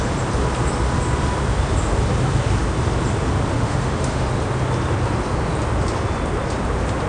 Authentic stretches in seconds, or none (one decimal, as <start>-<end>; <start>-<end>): 0.0-3.5; 4.3-7.1

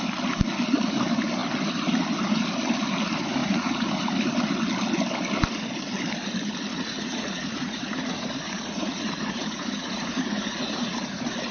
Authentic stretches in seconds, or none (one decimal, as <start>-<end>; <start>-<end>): 0.0-3.4; 4.0-6.7

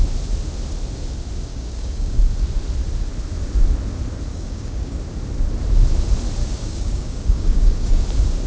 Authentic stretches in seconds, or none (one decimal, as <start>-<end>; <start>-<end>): 0.0-1.5; 2.2-4.3; 5.0-6.4; 8.0-8.5

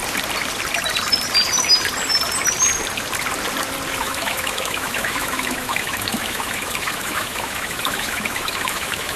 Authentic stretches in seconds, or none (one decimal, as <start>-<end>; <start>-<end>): 0.0-4.0

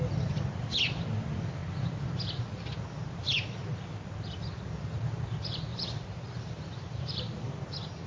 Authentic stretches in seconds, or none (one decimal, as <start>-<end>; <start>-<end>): 0.0-5.7; 7.6-8.1

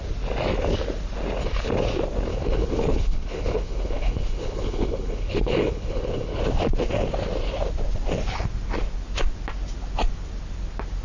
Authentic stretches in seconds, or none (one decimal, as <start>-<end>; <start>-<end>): 0.0-2.3; 6.4-11.0

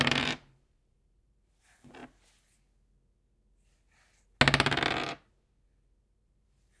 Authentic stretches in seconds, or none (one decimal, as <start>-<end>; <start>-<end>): 2.0-6.0